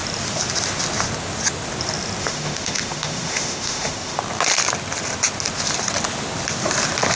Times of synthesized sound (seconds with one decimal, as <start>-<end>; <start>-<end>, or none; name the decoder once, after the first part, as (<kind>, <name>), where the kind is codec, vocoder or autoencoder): 2.2-4.2 (autoencoder, DAC-VAE)